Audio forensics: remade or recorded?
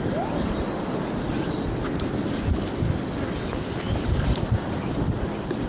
recorded